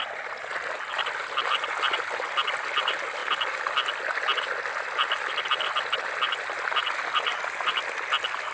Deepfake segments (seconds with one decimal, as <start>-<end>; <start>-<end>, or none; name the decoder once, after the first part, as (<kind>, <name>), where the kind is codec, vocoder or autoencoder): none